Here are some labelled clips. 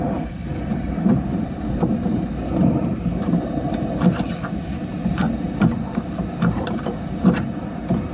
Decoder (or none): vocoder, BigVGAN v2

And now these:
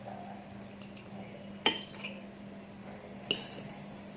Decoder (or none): none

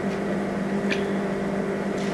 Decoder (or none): none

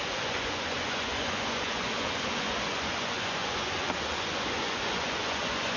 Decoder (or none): vocoder, Vocos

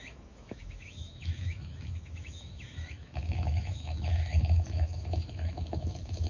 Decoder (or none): autoencoder, DAC-VAE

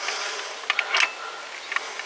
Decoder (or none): none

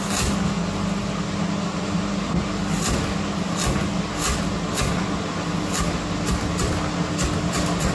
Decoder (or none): none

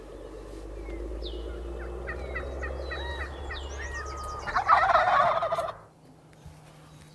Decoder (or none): none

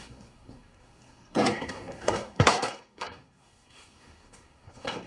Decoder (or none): codec, SNAC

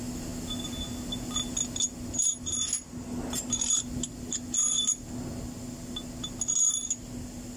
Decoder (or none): none